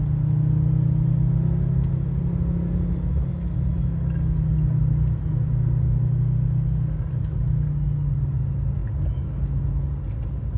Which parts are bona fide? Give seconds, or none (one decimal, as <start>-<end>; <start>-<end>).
0.0-8.8; 9.3-10.6